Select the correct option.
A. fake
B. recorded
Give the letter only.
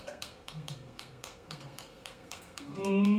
A